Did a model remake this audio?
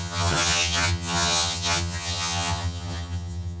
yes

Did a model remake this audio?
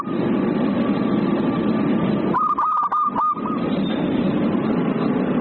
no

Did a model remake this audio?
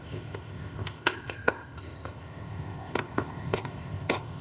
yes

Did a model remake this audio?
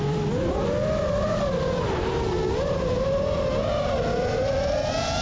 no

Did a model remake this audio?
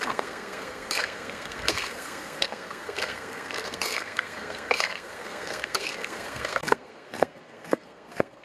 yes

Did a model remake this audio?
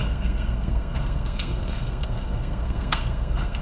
yes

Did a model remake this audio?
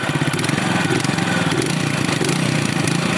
no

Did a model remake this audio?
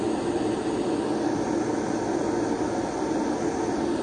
no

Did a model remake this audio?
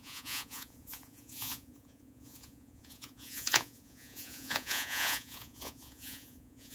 yes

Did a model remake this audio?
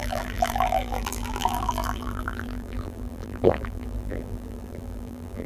yes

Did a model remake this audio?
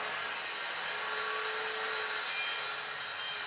no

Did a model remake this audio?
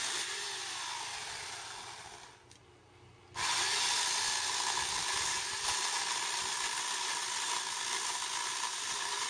no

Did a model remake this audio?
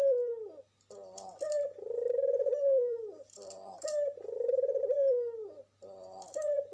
yes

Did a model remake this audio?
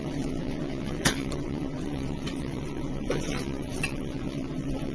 yes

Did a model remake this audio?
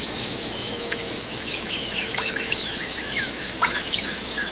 yes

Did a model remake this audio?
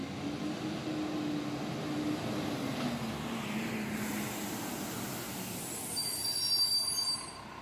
no